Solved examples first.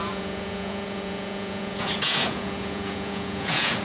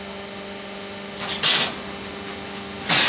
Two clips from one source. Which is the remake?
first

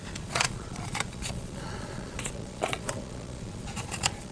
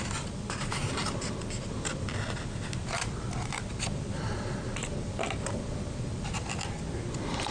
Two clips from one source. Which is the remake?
first